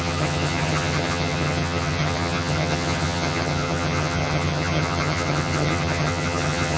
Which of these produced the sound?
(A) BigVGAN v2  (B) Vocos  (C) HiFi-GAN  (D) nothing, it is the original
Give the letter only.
C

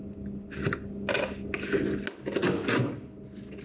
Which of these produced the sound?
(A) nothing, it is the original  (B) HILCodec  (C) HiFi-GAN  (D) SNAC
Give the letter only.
A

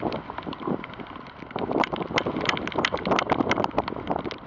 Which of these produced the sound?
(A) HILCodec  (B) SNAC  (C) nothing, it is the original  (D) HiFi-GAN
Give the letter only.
C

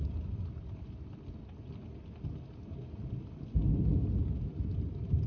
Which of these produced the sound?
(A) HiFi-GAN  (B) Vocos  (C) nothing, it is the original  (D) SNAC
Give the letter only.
C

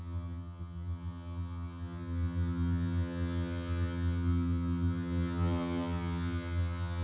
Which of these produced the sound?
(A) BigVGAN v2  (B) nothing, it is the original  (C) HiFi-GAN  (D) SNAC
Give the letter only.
C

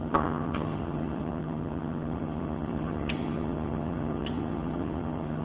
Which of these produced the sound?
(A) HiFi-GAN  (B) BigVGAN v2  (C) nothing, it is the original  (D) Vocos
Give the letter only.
A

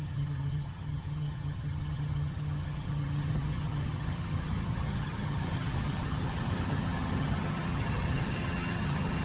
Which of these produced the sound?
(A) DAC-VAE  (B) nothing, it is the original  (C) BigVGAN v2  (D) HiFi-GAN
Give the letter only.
D